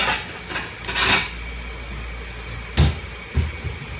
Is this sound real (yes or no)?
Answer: yes